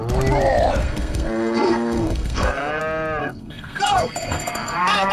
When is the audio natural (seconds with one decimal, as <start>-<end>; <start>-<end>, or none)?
0.0-0.8; 2.8-3.2